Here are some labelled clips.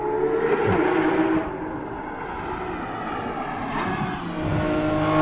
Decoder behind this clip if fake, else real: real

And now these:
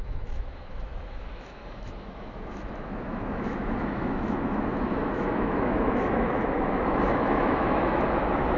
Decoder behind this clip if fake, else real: fake, autoencoder, DAC-VAE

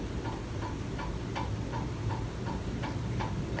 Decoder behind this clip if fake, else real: real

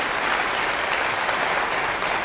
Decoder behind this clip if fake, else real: real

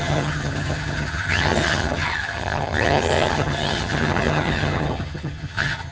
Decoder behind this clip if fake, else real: fake, vocoder, HiFi-GAN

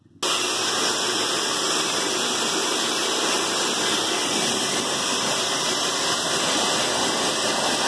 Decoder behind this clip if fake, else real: real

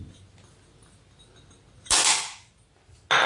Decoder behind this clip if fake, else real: real